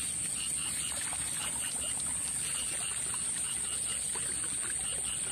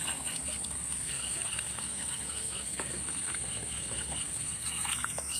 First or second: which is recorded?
first